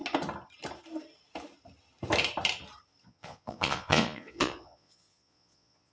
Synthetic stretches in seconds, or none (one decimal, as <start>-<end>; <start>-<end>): 3.0-5.9